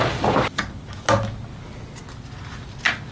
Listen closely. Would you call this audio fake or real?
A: real